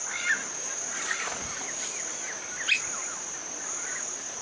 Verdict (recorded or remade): recorded